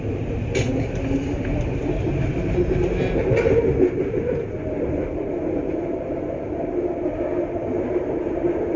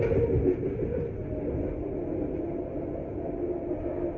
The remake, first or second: first